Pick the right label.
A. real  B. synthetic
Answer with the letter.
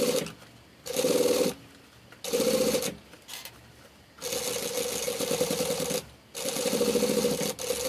A